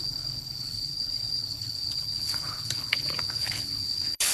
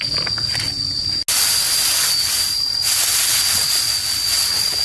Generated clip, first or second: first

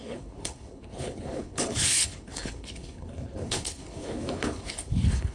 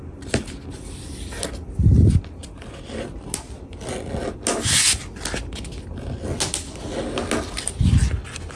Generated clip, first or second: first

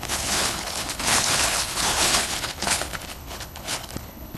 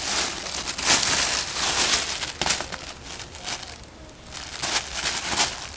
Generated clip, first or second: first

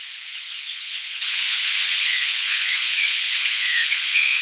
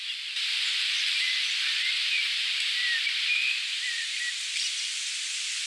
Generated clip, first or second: first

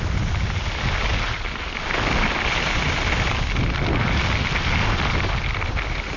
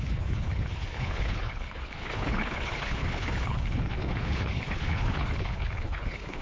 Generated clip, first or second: second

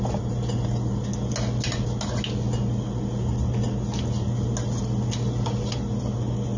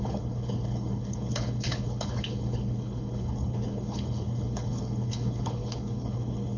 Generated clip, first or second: second